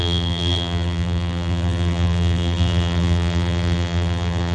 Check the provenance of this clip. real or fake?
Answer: fake